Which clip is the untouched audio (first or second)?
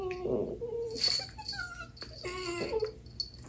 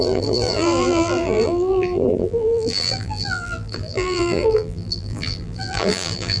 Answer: first